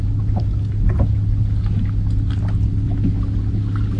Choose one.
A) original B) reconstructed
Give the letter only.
A